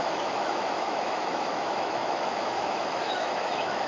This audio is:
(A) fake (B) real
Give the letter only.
A